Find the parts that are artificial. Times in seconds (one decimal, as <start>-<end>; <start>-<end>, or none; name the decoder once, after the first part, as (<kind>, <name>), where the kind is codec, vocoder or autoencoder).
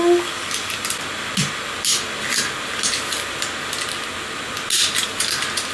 none